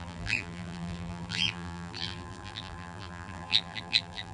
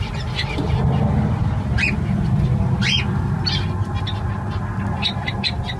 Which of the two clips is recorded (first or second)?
second